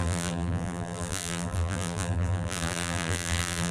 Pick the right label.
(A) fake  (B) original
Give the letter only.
A